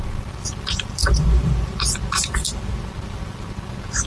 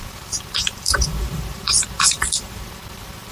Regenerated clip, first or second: second